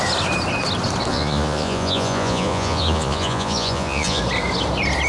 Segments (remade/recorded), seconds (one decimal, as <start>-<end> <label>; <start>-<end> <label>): 0.0-1.1 recorded; 1.1-4.2 remade; 4.2-5.1 recorded

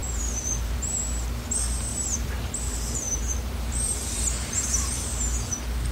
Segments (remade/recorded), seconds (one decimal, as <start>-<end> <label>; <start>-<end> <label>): 0.0-1.0 remade; 1.0-1.9 recorded; 1.9-5.4 remade; 5.4-5.9 recorded

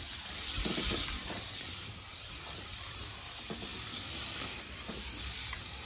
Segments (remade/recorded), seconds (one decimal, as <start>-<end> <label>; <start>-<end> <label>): 0.0-3.7 remade; 3.7-4.2 recorded; 4.2-5.9 remade

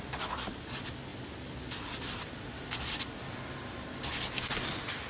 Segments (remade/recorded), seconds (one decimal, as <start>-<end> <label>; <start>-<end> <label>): 0.0-5.1 recorded

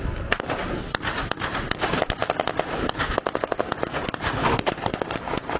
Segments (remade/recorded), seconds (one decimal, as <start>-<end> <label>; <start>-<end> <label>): 0.0-5.6 recorded

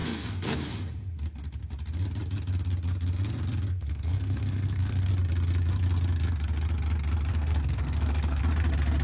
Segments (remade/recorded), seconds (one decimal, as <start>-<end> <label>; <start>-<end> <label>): 0.0-0.7 remade; 0.7-3.7 recorded; 3.7-5.1 remade; 5.1-7.3 recorded; 7.3-8.4 remade; 8.4-9.0 recorded

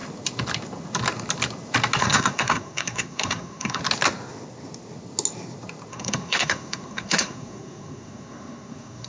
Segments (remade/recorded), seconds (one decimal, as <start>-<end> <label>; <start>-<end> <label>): 0.0-2.0 recorded; 2.0-3.8 remade; 3.8-5.9 recorded; 5.9-9.1 remade